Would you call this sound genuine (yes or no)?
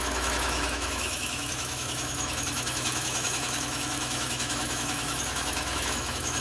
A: no